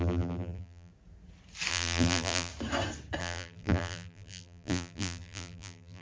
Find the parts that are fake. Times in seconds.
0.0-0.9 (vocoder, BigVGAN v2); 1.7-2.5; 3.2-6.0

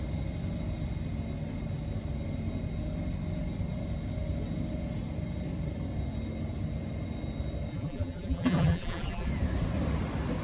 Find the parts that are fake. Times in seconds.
7.7-9.3 (vocoder, BigVGAN v2)